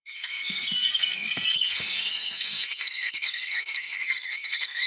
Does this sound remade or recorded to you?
remade